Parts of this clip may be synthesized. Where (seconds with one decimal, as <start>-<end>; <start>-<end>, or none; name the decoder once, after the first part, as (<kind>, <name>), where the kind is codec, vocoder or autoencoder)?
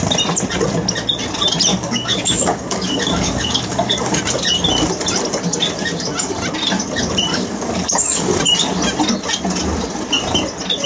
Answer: 1.7-4.2 (codec, DAC); 7.3-8.4